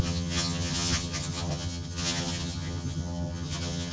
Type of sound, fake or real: fake